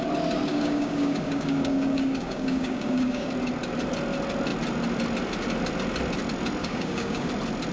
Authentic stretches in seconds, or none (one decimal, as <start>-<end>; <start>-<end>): 0.0-0.5; 3.3-6.6; 7.3-7.7